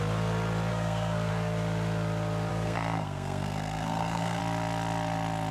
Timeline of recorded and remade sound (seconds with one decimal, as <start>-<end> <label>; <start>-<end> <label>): 0.0-0.7 recorded; 0.7-1.3 remade; 1.3-2.5 recorded; 2.5-4.4 remade; 4.4-5.5 recorded